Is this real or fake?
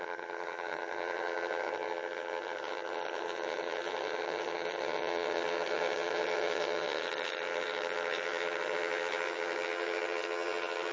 fake